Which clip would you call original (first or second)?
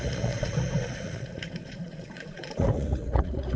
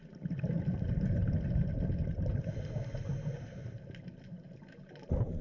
second